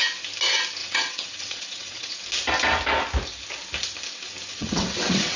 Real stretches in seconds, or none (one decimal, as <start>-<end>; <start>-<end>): 0.0-0.8; 2.1-4.5